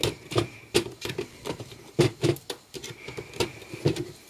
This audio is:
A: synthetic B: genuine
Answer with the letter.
B